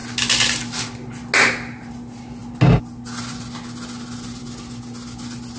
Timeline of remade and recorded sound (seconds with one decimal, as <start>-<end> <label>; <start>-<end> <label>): 0.0-5.6 recorded